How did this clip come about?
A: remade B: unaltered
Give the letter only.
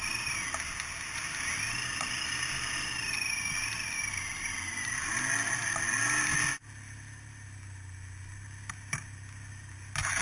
B